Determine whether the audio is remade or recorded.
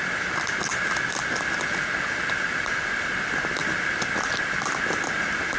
recorded